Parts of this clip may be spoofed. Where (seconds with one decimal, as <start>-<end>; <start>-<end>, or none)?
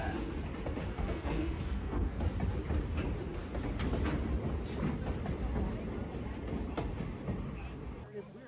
0.9-2.2